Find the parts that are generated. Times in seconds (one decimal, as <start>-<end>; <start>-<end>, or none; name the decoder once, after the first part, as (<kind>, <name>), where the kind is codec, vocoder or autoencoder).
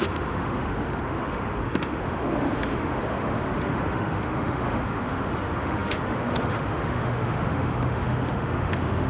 0.0-9.1 (autoencoder, DAC-VAE)